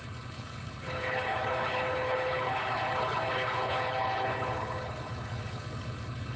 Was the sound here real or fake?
fake